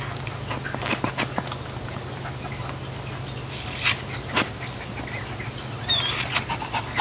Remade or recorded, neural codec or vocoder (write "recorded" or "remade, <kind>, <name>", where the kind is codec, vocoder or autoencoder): recorded